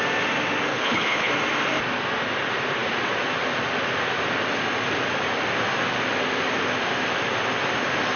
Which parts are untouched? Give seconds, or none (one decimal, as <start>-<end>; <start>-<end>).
0.0-0.7; 1.3-8.2